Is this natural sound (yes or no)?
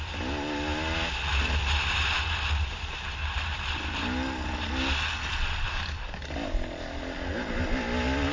yes